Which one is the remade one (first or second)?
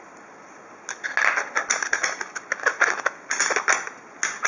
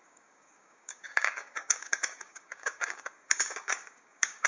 second